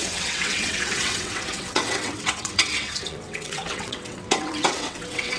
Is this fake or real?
fake